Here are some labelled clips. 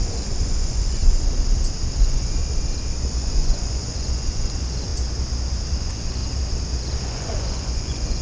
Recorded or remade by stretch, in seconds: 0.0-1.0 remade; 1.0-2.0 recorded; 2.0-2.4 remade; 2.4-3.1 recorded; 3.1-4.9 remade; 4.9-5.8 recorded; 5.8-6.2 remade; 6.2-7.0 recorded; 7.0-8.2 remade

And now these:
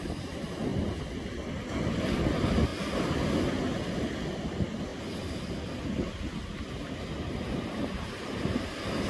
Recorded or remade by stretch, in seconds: 0.0-9.1 recorded

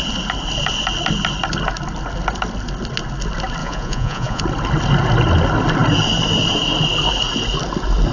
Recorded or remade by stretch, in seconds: 0.0-3.6 recorded; 3.6-4.4 remade; 4.4-8.1 recorded

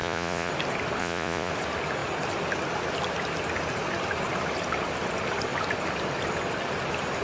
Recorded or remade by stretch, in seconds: 0.0-0.5 remade; 0.5-1.0 recorded; 1.0-1.5 remade; 1.5-7.2 recorded

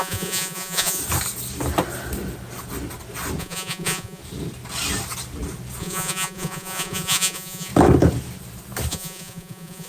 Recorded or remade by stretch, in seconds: 0.0-1.0 remade; 1.0-3.4 recorded; 3.4-4.2 remade; 4.2-5.8 recorded; 5.8-7.7 remade; 7.7-8.9 recorded; 8.9-9.9 remade